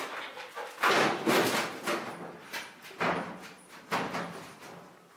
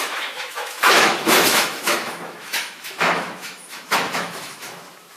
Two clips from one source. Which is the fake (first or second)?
second